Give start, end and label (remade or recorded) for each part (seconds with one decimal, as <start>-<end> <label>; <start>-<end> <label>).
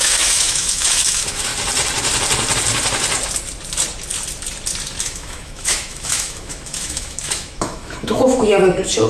0.0-1.5 remade; 1.5-5.0 recorded; 5.0-9.1 remade